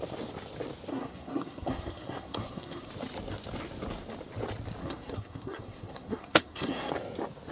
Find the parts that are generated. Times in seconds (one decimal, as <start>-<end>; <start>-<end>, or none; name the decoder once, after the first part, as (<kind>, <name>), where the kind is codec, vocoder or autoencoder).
0.9-2.9 (codec, SNAC); 4.8-6.9